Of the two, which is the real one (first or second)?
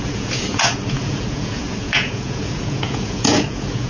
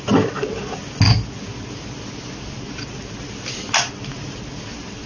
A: second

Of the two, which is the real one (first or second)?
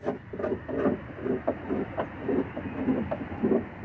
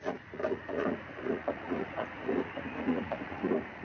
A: first